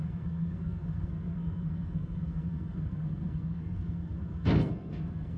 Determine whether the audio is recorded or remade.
remade